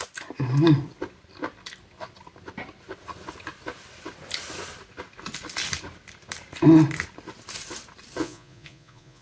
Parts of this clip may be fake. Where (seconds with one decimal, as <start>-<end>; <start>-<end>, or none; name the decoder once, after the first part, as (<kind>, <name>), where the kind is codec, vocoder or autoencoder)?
8.2-9.2 (vocoder, Vocos)